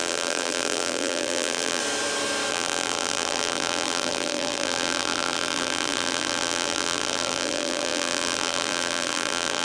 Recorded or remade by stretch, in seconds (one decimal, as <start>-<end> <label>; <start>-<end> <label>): 0.0-1.8 remade; 1.8-2.5 recorded; 2.5-9.6 remade